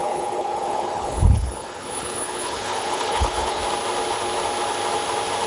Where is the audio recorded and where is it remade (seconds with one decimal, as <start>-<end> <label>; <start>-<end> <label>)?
0.0-3.6 remade; 3.6-5.5 recorded